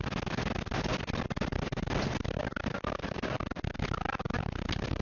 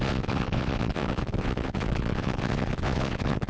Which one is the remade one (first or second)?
second